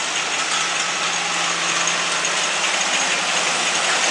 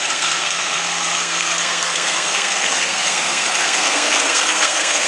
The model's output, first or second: second